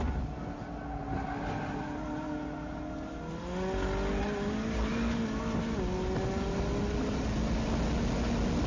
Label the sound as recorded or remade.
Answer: recorded